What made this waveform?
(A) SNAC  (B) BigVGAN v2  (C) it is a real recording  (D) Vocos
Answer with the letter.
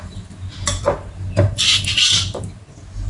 C